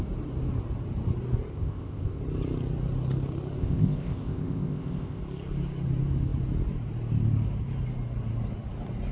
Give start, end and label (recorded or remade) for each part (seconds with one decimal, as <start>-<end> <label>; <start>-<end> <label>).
0.0-1.5 recorded; 1.5-2.2 remade; 2.2-3.6 recorded; 3.6-5.2 remade; 5.2-9.1 recorded